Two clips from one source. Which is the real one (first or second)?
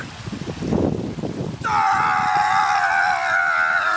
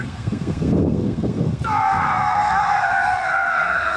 first